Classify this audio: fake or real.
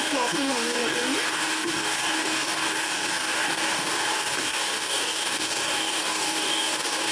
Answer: fake